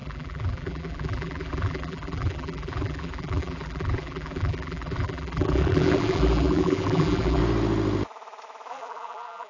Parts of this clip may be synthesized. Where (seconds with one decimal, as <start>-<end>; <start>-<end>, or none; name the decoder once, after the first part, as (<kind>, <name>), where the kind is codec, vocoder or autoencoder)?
0.0-7.4 (vocoder, BigVGAN v2); 8.7-9.5